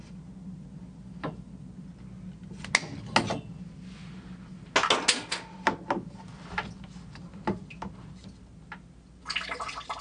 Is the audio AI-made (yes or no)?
no